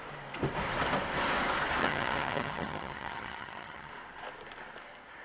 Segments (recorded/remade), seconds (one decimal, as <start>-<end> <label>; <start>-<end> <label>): 0.0-1.8 recorded; 1.8-3.9 remade; 3.9-5.2 recorded